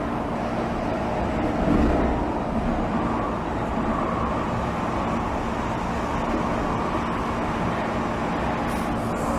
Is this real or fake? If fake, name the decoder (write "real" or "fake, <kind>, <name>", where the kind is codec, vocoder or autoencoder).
real